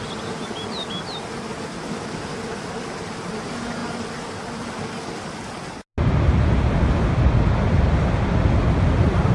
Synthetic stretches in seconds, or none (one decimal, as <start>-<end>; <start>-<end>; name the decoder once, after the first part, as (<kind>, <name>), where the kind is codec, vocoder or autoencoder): none